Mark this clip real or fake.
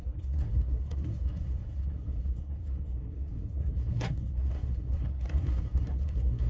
fake